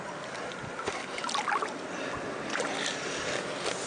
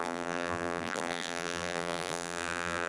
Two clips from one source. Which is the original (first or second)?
first